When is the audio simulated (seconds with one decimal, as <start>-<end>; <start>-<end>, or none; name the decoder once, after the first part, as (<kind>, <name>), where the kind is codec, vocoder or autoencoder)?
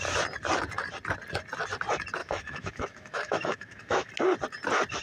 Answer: 2.2-4.1 (autoencoder, DAC-VAE)